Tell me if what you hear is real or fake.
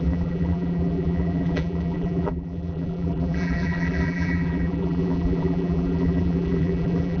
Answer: fake